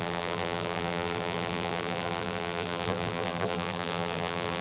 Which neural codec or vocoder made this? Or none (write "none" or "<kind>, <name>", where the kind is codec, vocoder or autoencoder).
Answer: vocoder, BigVGAN v2